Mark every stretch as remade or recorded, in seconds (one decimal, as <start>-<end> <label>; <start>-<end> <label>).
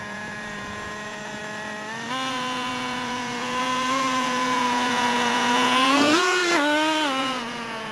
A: 0.0-1.4 remade; 1.4-2.3 recorded; 2.3-6.4 remade; 6.4-7.2 recorded; 7.2-7.9 remade